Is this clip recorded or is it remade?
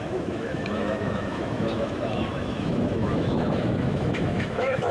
remade